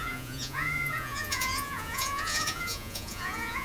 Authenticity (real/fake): fake